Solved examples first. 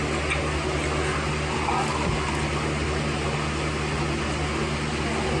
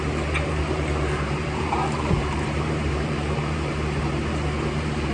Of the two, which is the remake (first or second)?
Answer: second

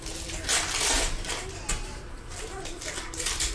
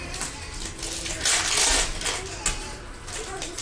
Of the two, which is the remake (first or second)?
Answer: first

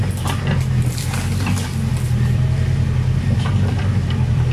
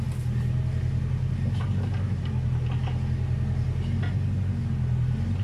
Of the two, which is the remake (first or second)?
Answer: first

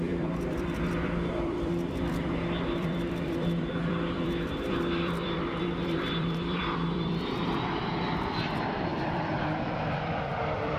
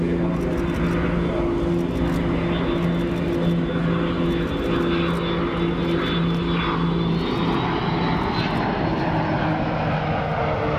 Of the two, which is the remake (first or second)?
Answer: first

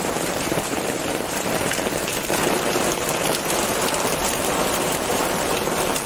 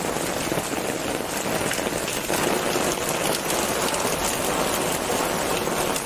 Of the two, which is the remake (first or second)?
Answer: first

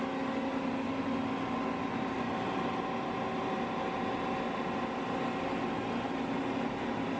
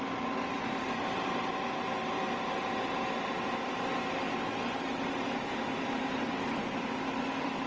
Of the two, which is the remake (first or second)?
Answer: second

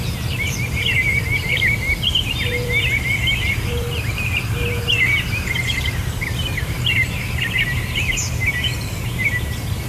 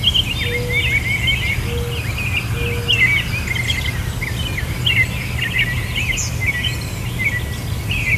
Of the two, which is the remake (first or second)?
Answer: first